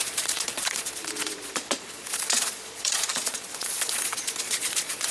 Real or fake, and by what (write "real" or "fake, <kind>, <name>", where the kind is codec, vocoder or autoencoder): fake, vocoder, Vocos